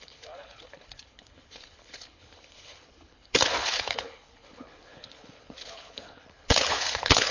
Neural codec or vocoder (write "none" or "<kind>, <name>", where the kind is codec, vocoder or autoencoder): codec, HILCodec